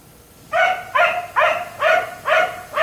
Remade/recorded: recorded